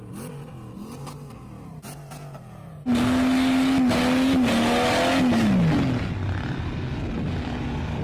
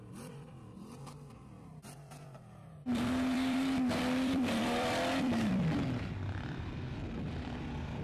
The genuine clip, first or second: first